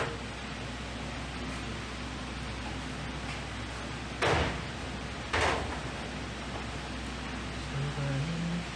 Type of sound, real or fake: real